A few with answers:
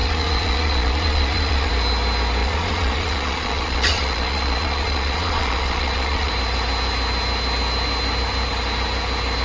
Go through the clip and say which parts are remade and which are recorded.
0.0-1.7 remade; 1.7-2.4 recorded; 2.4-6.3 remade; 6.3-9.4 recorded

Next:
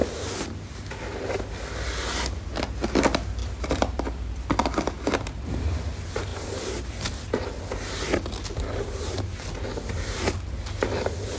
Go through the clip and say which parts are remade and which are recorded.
0.0-3.4 recorded; 3.4-5.6 remade; 5.6-11.4 recorded

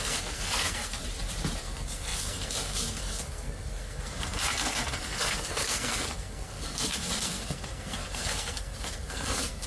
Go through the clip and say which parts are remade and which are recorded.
0.0-1.0 remade; 1.0-1.6 recorded; 1.6-9.7 remade

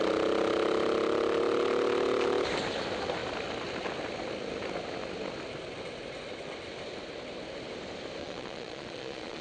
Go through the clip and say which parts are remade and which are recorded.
0.0-8.2 recorded; 8.2-9.4 remade

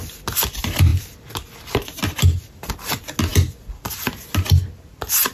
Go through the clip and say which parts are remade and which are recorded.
0.0-5.3 recorded